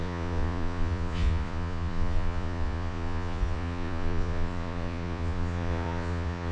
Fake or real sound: fake